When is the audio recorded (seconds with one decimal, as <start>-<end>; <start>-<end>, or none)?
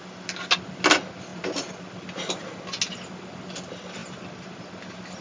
0.0-5.2